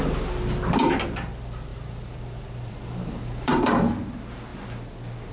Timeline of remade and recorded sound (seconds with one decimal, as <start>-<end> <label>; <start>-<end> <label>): 0.0-1.7 recorded; 1.7-3.8 remade; 3.8-5.3 recorded